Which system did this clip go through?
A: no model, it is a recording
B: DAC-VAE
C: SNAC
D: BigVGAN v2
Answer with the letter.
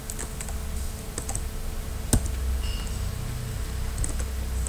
A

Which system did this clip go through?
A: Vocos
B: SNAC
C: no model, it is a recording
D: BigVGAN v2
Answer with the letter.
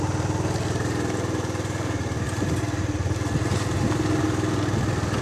C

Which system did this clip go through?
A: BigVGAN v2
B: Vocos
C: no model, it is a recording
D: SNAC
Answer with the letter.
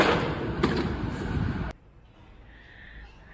C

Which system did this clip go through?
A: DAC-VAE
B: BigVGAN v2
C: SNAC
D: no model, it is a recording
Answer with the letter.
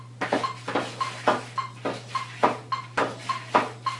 D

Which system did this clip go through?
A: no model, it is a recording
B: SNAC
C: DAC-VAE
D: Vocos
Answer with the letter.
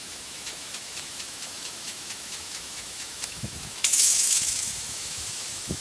C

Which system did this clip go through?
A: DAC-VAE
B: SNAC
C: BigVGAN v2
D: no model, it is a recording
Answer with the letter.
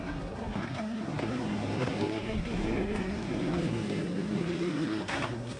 B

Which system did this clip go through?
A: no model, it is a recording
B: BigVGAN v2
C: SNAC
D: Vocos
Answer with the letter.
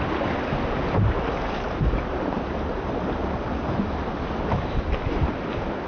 A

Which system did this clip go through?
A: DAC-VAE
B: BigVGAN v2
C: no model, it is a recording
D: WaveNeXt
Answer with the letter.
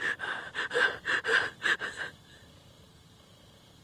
B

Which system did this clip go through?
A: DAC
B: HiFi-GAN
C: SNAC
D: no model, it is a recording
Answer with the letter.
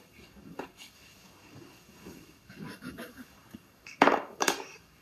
A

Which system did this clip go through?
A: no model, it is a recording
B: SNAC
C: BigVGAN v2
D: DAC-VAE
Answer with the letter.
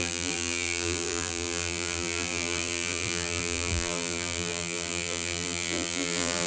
C